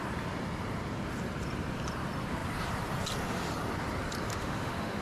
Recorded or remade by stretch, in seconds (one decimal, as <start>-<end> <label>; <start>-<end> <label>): 0.0-4.3 recorded; 4.3-5.0 remade